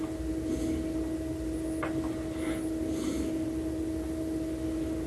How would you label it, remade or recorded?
recorded